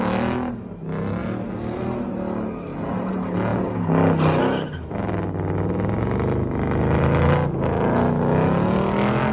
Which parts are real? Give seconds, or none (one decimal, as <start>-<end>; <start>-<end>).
0.0-9.3

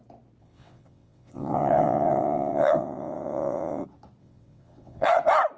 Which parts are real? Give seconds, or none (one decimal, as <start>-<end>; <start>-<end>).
0.0-0.4; 3.8-4.2; 5.1-5.6

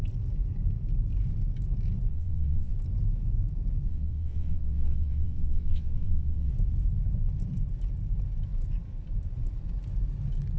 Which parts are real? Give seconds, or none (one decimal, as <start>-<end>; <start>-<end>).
0.0-2.1; 2.7-3.9; 6.5-10.6

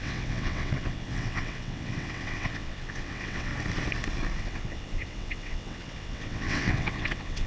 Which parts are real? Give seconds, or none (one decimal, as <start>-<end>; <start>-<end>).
3.5-4.4

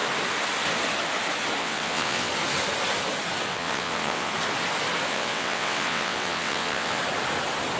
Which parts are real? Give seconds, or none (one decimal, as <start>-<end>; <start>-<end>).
0.0-1.6; 2.3-3.5; 4.3-5.1; 7.0-7.8

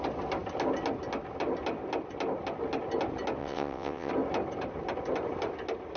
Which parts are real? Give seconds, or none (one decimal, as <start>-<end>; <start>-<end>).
0.0-3.4; 4.1-6.0